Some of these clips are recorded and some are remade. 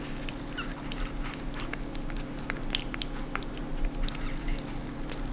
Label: recorded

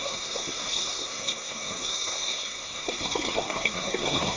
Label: remade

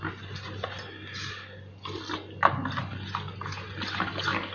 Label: recorded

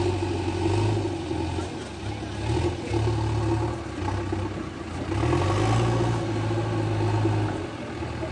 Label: recorded